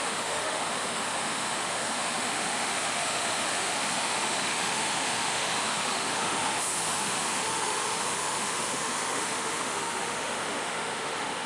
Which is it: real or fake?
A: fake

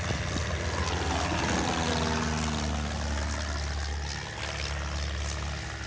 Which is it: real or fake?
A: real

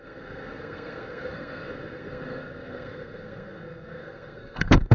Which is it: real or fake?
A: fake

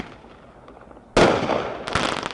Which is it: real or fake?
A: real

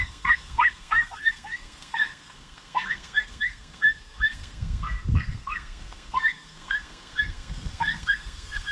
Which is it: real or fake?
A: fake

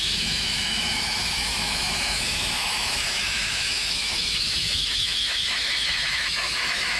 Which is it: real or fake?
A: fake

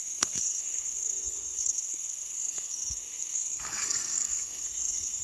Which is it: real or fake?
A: fake